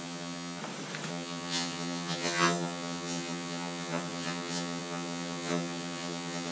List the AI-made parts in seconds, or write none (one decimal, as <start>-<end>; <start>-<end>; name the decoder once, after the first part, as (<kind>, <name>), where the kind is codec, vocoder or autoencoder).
0.0-0.6 (vocoder, HiFi-GAN); 1.1-6.5